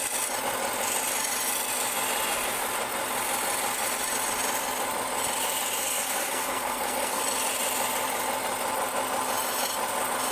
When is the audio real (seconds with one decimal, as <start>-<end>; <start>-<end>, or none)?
0.0-5.8; 7.2-10.3